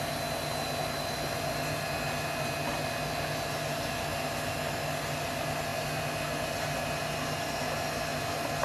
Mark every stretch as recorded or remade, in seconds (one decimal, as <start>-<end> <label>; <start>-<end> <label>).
0.0-8.6 recorded